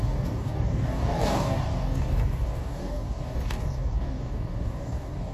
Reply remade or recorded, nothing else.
remade